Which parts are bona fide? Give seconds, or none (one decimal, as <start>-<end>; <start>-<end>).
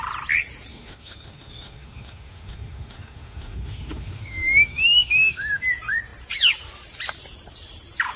0.0-0.7; 5.6-8.2